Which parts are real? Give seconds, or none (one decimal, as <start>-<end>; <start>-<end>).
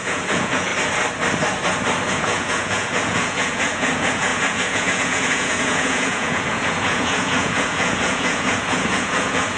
0.7-2.1